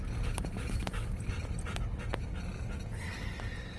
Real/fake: real